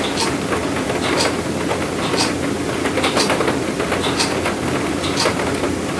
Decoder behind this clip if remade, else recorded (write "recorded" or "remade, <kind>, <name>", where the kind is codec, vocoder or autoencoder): recorded